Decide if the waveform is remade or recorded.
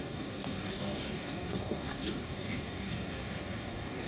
remade